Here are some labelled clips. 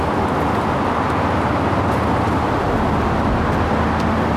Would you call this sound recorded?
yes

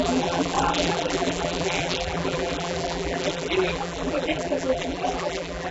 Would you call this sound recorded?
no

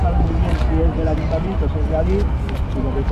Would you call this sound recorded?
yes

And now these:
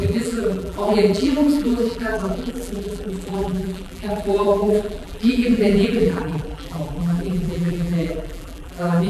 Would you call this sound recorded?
no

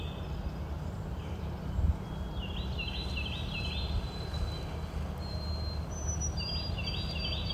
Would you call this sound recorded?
yes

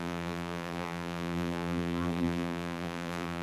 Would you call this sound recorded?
no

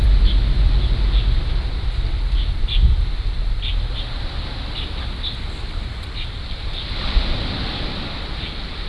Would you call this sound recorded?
yes